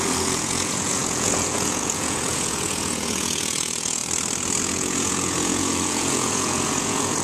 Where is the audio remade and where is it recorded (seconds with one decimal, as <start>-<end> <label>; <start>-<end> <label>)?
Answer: 0.0-4.0 remade; 4.0-4.6 recorded; 4.6-7.2 remade